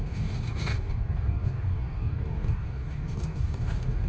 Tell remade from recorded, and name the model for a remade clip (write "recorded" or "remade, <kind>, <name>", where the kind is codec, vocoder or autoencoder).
remade, codec, DAC